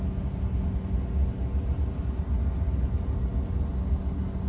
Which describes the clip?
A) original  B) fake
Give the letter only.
A